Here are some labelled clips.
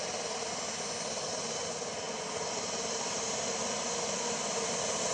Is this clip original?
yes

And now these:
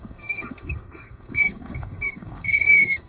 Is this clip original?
no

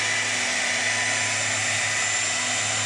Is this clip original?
yes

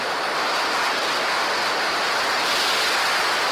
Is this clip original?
yes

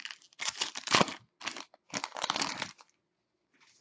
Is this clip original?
yes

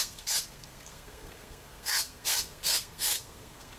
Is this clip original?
no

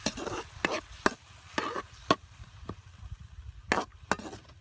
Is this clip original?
yes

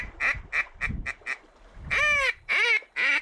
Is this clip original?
yes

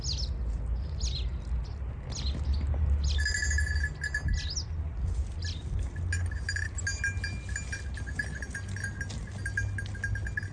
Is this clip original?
yes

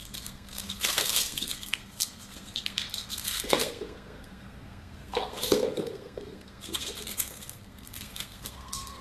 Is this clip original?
no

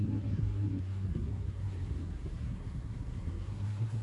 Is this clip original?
no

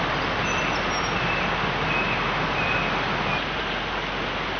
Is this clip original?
yes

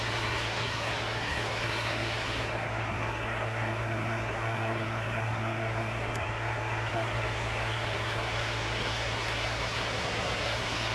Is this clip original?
no